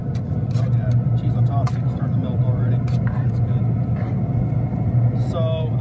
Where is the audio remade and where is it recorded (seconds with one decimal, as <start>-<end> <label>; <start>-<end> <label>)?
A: 0.0-0.8 remade; 0.8-5.8 recorded

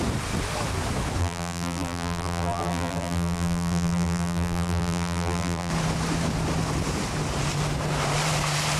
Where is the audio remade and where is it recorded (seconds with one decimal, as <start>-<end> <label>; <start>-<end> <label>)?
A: 0.0-1.2 recorded; 1.2-5.7 remade; 5.7-8.8 recorded